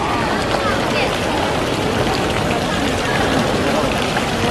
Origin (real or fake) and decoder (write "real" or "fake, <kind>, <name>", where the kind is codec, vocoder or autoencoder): real